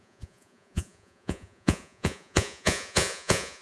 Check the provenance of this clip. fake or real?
fake